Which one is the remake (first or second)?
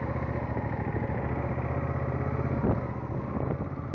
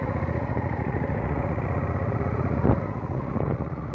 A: second